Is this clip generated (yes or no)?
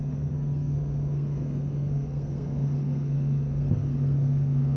yes